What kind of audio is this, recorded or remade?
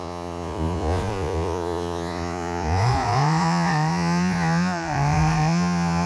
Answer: remade